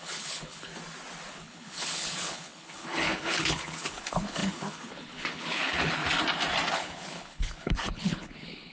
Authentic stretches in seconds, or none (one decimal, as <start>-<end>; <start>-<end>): 0.7-1.3; 6.0-6.7